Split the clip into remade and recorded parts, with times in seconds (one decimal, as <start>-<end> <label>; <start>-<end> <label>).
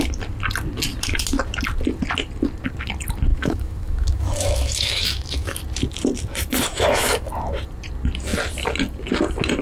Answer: 0.0-3.3 recorded; 3.3-5.6 remade; 5.6-6.7 recorded; 6.7-7.3 remade; 7.3-9.6 recorded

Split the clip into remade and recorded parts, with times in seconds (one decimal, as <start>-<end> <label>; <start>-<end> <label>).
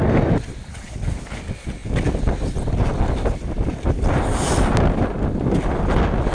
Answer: 0.0-0.7 recorded; 0.7-1.4 remade; 1.4-6.3 recorded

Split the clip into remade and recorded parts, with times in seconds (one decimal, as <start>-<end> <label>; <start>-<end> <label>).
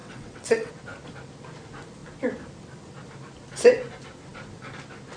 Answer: 0.0-0.7 remade; 0.7-5.2 recorded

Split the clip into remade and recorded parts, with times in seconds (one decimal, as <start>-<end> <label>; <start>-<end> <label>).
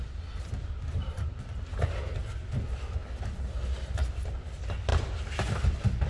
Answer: 0.0-3.0 remade; 3.0-4.3 recorded; 4.3-6.1 remade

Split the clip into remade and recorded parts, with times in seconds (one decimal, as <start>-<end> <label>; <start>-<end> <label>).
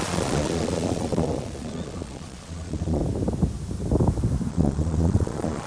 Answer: 0.0-3.0 remade; 3.0-4.5 recorded; 4.5-5.7 remade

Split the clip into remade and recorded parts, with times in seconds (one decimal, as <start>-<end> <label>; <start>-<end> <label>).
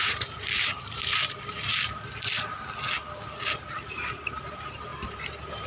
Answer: 0.0-1.7 remade; 1.7-3.7 recorded; 3.7-5.7 remade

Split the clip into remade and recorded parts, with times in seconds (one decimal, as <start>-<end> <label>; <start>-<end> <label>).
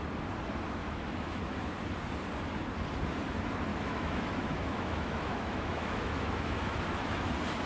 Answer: 0.0-0.8 recorded; 0.8-1.4 remade; 1.4-3.7 recorded; 3.7-7.3 remade; 7.3-7.7 recorded